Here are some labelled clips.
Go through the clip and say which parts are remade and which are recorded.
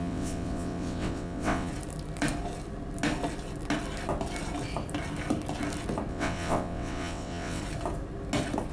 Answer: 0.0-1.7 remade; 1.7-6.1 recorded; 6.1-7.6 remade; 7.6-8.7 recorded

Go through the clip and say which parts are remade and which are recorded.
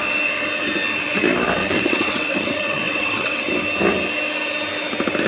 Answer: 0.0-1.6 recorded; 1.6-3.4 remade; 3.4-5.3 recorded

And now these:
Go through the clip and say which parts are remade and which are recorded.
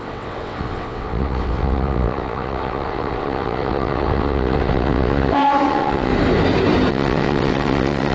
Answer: 0.0-6.1 remade; 6.1-6.9 recorded; 6.9-8.1 remade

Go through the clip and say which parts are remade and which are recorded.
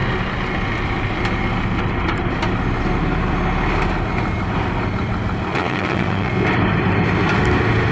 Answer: 0.0-5.5 recorded; 5.5-6.3 remade; 6.3-7.9 recorded